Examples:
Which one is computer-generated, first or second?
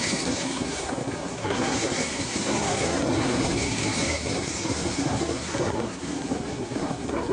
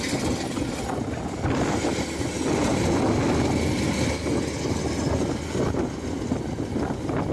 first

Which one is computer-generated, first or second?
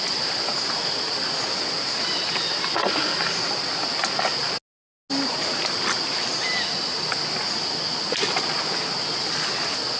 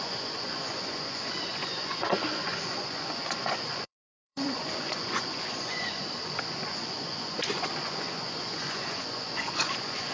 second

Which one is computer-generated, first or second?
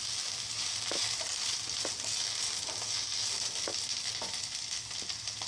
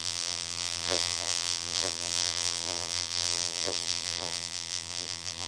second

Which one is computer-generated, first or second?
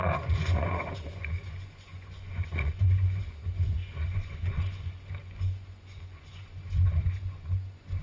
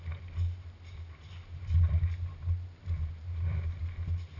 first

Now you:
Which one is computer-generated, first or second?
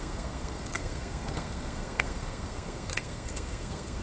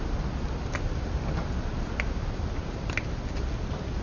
first